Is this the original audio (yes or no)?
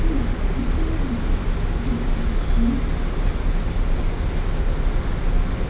yes